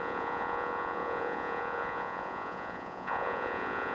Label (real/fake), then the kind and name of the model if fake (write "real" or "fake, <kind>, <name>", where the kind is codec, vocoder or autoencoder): fake, vocoder, Vocos